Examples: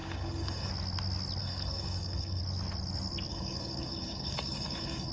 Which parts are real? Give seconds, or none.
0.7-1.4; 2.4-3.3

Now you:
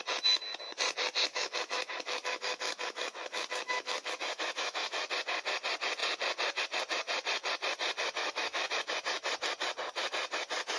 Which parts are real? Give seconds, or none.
0.0-1.3; 5.1-8.2; 8.7-10.8

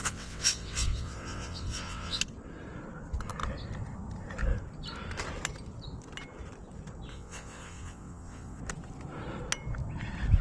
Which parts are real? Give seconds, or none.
2.2-7.1; 8.6-10.4

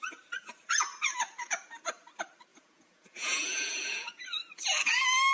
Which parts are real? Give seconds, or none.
0.0-2.5; 4.2-5.3

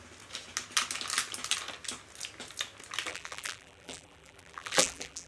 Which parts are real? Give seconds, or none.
0.0-3.1

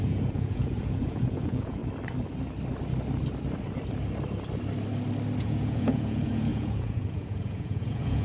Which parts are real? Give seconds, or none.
1.8-5.4

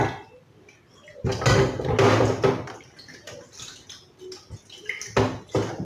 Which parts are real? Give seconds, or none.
0.0-5.8

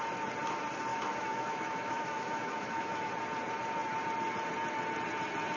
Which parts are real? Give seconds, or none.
0.0-0.9; 3.1-5.6